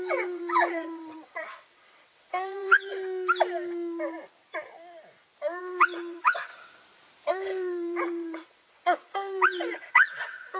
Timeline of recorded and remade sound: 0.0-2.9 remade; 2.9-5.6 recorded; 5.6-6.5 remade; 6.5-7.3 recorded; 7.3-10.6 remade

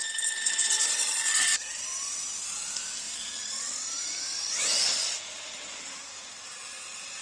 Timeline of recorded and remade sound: 0.0-7.2 recorded

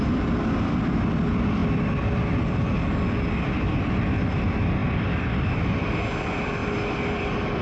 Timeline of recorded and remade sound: 0.0-7.6 recorded

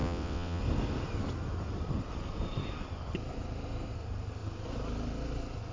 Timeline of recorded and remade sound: 0.0-0.6 remade; 0.6-5.7 recorded

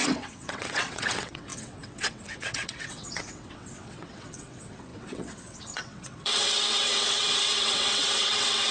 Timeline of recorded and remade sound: 0.0-8.7 remade

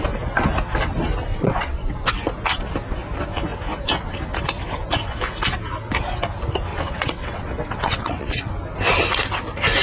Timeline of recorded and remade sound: 0.0-1.3 recorded; 1.3-2.1 remade; 2.1-6.7 recorded; 6.7-8.5 remade; 8.5-9.8 recorded

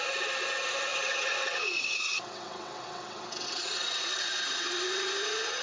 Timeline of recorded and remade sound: 0.0-0.9 recorded; 0.9-4.3 remade; 4.3-5.6 recorded

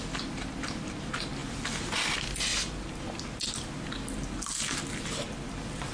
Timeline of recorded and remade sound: 0.0-5.9 recorded